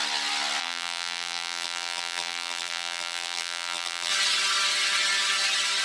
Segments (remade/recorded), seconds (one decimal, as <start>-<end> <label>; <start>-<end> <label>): 0.0-0.6 recorded; 0.6-4.1 remade; 4.1-5.8 recorded